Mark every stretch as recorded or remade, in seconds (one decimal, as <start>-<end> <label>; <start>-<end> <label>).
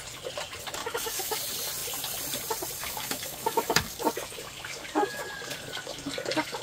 0.0-0.8 recorded; 0.8-1.4 remade; 1.4-2.8 recorded; 2.8-6.6 remade